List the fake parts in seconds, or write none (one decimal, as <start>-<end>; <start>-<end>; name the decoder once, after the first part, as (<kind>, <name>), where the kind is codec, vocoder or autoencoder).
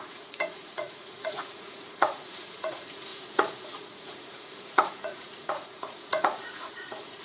0.0-7.2 (vocoder, Vocos)